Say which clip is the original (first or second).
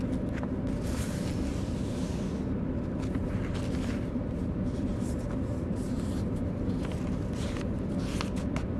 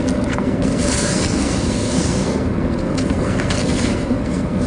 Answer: first